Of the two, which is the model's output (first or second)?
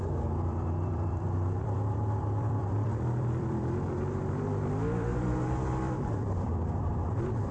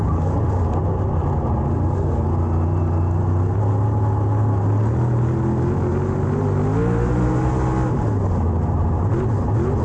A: first